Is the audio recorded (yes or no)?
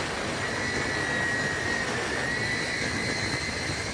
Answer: yes